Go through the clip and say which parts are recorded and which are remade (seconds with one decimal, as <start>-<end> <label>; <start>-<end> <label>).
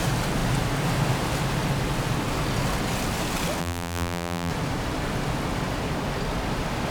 0.0-3.6 recorded; 3.6-4.5 remade; 4.5-6.9 recorded